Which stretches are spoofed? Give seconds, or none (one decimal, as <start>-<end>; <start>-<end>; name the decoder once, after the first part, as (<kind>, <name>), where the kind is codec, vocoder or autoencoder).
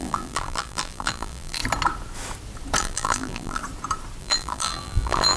0.0-1.6 (vocoder, BigVGAN v2); 2.8-3.6; 4.2-5.4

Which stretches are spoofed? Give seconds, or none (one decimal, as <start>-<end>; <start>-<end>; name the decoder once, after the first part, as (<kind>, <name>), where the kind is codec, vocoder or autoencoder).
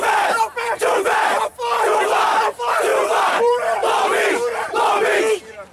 0.0-1.5 (vocoder, BigVGAN v2); 2.3-2.9; 3.4-5.7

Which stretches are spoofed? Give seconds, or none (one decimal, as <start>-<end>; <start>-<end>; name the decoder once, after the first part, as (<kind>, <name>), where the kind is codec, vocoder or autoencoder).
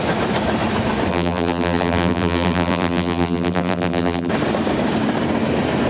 1.1-4.3 (vocoder, BigVGAN v2)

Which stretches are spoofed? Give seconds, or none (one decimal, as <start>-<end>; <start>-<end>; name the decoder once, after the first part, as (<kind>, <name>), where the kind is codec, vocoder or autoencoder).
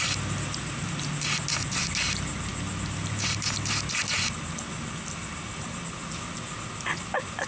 none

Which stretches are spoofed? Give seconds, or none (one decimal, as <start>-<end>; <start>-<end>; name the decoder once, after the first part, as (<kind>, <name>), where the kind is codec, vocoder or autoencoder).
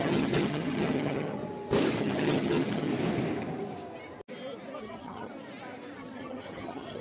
0.0-1.4 (vocoder, HiFi-GAN); 2.0-2.9; 4.8-5.3; 6.0-7.0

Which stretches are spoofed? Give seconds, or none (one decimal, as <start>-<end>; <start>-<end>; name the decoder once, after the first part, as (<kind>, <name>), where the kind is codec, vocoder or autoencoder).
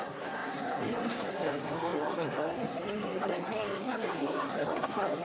0.0-5.2 (codec, SNAC)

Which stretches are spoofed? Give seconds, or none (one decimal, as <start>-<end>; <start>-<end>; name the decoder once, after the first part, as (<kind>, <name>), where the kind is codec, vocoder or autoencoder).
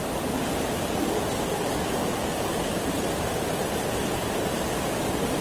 1.8-3.5 (vocoder, BigVGAN v2)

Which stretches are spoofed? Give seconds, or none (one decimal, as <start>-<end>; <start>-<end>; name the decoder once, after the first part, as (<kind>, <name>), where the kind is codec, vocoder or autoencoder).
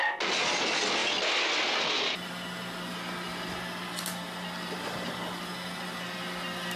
none